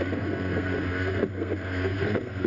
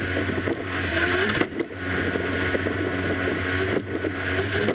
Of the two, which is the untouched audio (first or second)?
second